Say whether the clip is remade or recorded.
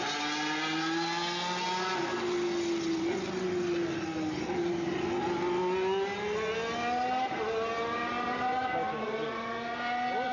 recorded